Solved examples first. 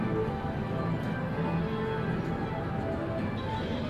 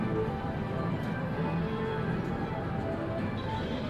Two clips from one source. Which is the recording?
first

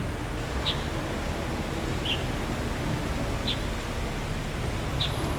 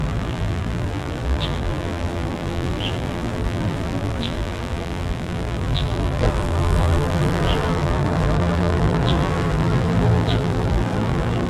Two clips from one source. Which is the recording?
first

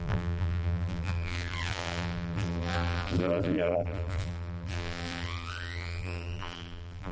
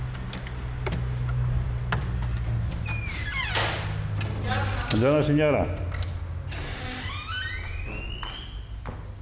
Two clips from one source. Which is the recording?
second